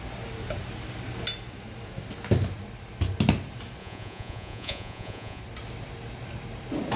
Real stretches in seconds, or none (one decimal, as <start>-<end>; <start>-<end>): 0.0-3.8; 5.4-7.0